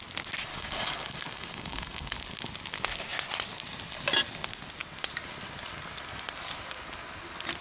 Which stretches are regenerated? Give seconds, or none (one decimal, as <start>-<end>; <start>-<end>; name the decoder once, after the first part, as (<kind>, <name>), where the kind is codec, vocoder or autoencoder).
0.5-2.1 (codec, DAC)